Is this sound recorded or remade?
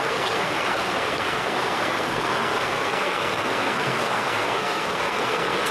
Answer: remade